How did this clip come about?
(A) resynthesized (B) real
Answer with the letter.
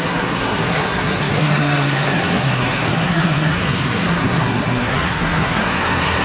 A